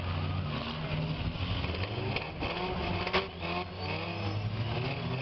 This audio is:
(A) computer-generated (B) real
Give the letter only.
B